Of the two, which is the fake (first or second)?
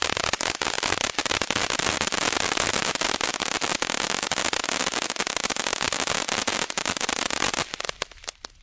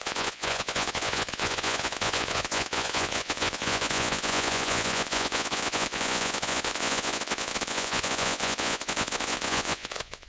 second